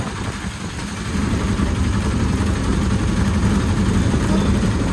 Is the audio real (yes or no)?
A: yes